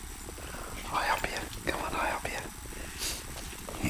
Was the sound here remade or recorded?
recorded